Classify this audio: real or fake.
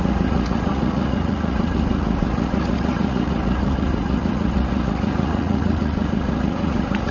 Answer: fake